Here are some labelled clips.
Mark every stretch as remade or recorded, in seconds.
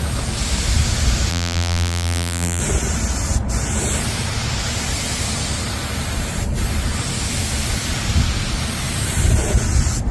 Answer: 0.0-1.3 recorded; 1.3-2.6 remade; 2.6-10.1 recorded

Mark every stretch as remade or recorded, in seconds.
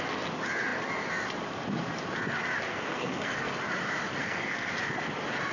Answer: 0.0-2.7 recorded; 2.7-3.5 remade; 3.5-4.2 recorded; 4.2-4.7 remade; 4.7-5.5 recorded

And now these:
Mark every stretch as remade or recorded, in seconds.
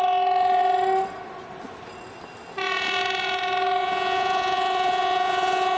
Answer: 0.0-3.8 recorded; 3.8-5.8 remade